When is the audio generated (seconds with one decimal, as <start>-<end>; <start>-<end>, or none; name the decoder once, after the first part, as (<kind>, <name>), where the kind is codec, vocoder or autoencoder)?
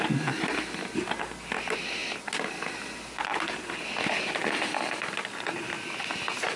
none